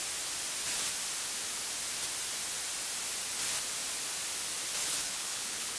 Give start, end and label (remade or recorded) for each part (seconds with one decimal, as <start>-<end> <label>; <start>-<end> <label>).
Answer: 0.0-4.8 recorded; 4.8-5.8 remade